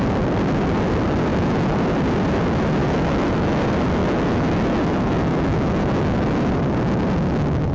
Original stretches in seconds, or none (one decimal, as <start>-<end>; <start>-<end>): 0.0-1.3; 1.8-2.8; 3.6-4.0; 6.5-7.7